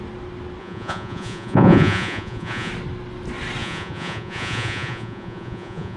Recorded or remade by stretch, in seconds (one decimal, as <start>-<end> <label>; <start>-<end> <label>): 0.0-0.6 recorded; 0.6-2.7 remade; 2.7-3.6 recorded; 3.6-6.0 remade

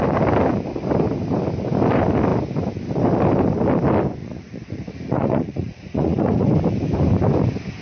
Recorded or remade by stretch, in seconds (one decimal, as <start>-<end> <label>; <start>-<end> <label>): 0.0-4.2 recorded; 4.2-6.5 remade; 6.5-7.8 recorded

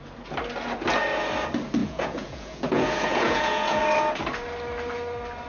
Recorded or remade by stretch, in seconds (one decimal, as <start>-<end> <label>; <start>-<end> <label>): 0.0-1.8 recorded; 1.8-3.8 remade; 3.8-5.5 recorded

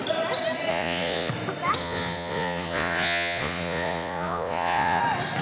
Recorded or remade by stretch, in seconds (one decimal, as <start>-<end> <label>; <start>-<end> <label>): 0.0-0.7 recorded; 0.7-1.3 remade; 1.3-1.8 recorded; 1.8-5.0 remade; 5.0-5.4 recorded

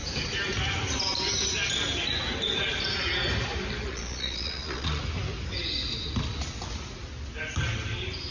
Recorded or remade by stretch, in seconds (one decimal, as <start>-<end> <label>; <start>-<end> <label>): 0.0-3.9 recorded; 3.9-5.0 remade; 5.0-8.3 recorded

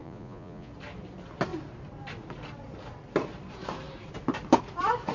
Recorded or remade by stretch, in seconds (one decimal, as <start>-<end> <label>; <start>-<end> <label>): 0.0-0.7 remade; 0.7-5.1 recorded